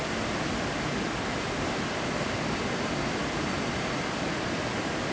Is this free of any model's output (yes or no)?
no